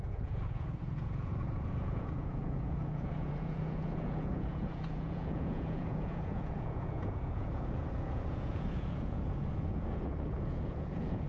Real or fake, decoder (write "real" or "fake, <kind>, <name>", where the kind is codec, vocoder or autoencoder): fake, vocoder, Vocos